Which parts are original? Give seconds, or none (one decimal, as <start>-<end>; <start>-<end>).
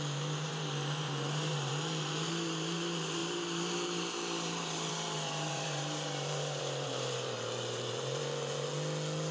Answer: 8.7-9.3